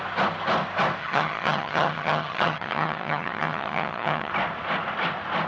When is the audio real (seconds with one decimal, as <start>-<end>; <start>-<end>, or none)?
0.0-1.0; 4.3-5.5